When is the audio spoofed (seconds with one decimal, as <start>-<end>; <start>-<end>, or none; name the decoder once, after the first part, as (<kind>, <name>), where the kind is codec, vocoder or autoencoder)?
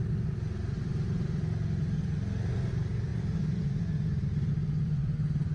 none